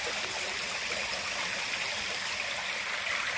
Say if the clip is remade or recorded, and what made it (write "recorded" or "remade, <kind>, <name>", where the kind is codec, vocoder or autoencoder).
recorded